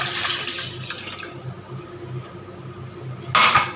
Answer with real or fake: real